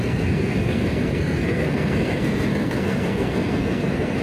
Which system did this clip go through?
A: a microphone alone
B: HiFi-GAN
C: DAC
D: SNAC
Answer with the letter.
D